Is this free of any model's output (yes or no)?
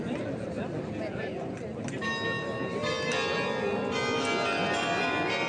yes